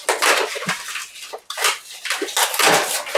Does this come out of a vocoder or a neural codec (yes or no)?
no